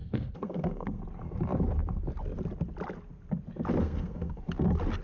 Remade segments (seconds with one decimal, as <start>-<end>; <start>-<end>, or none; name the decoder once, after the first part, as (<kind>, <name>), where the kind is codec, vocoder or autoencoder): 0.0-1.0 (codec, SNAC); 3.8-4.4